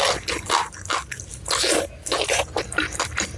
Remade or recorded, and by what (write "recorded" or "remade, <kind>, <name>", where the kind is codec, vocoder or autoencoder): recorded